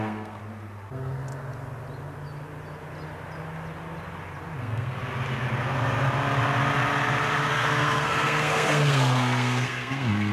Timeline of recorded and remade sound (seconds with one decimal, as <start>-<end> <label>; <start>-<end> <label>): 0.0-0.4 remade; 0.4-0.9 recorded; 0.9-1.3 remade; 1.3-4.6 recorded; 4.6-5.0 remade; 5.0-7.5 recorded; 7.5-10.3 remade